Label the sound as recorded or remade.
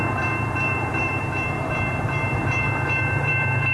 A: remade